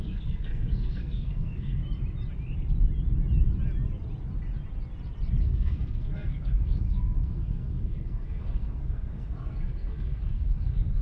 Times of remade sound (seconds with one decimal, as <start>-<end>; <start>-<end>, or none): 0.0-1.8; 5.4-11.0